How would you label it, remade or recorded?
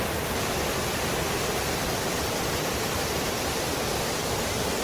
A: recorded